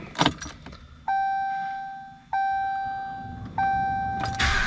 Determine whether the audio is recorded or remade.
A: recorded